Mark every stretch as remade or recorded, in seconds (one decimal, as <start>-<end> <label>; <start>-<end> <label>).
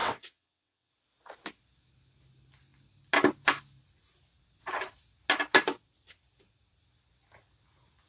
0.0-0.9 remade; 0.9-8.1 recorded